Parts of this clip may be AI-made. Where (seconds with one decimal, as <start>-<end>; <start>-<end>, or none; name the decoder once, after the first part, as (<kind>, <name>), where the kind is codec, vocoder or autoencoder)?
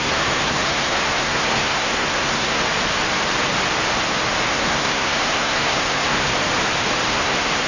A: 0.0-2.6 (codec, SNAC); 4.5-6.3; 7.1-7.7